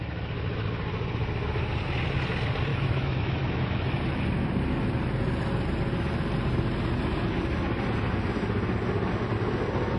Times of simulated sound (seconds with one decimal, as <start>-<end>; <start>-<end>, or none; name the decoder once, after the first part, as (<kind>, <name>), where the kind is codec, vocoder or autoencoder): 2.7-4.2 (autoencoder, DAC-VAE)